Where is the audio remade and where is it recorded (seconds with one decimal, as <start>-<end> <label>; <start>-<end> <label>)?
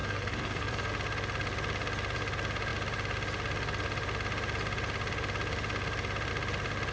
0.0-0.9 remade; 0.9-6.9 recorded